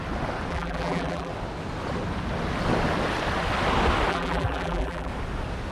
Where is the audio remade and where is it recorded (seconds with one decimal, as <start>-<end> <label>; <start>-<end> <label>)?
0.0-0.5 recorded; 0.5-1.3 remade; 1.3-4.1 recorded; 4.1-5.1 remade; 5.1-5.7 recorded